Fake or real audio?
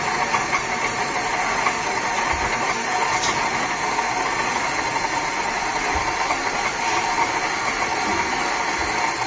real